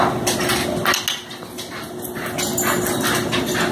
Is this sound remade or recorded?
recorded